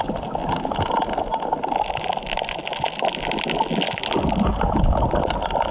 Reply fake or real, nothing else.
real